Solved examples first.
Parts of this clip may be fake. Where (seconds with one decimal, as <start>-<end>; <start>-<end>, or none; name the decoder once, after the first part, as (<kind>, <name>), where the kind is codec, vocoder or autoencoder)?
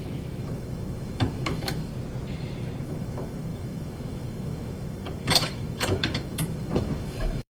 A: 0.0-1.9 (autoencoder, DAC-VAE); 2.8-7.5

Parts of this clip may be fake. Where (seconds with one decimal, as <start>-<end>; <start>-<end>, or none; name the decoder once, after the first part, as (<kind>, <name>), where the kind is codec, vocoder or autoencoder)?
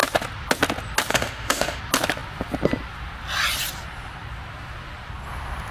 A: 1.1-1.8 (autoencoder, DAC-VAE)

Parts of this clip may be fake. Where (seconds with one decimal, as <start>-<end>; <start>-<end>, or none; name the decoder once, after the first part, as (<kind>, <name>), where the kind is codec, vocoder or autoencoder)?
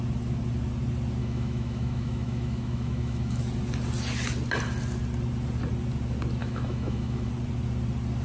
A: 1.2-3.4 (autoencoder, DAC-VAE); 6.4-7.3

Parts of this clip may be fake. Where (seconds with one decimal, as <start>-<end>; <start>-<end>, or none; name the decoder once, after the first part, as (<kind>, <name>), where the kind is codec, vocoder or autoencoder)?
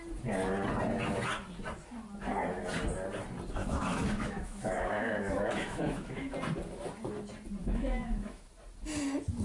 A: 3.6-6.3 (autoencoder, DAC-VAE); 7.6-8.5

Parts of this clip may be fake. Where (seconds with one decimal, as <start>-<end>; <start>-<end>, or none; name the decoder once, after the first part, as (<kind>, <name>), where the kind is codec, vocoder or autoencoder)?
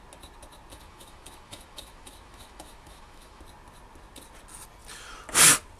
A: 0.7-3.4 (autoencoder, DAC-VAE)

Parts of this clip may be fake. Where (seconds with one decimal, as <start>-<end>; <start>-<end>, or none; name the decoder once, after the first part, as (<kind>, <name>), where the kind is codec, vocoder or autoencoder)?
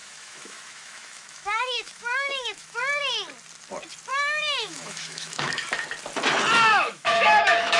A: 0.0-2.8 (autoencoder, DAC-VAE); 4.1-5.5; 6.7-7.8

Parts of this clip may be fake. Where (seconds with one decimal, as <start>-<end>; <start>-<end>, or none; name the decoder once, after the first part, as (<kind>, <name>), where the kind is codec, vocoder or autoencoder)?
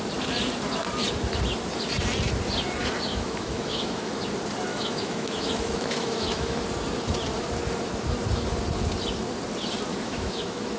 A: 3.1-4.2 (autoencoder, DAC-VAE); 4.7-6.6; 9.9-10.8